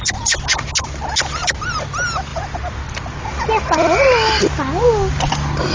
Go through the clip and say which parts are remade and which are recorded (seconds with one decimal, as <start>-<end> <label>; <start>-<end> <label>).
0.0-5.7 recorded